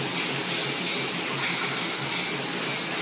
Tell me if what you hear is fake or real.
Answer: real